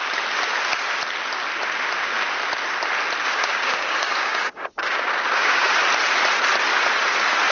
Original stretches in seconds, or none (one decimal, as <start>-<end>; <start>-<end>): 0.0-3.2; 5.8-7.5

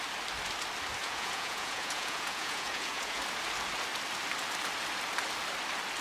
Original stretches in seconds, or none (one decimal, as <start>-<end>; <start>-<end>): 0.0-1.0; 3.2-6.0

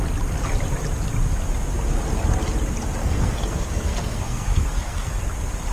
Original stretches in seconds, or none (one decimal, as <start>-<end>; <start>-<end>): 0.0-3.0; 5.2-5.7

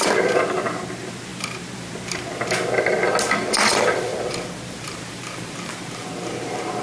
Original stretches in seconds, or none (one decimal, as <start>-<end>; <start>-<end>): 0.0-4.1

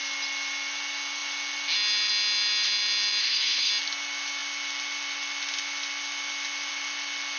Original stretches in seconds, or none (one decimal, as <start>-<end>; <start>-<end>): 0.0-3.2; 3.7-7.4